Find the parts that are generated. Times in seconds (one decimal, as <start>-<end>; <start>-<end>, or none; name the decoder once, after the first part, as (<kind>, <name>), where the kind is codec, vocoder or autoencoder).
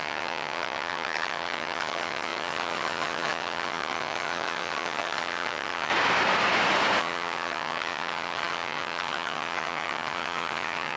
0.0-5.9 (vocoder, HiFi-GAN); 7.0-11.0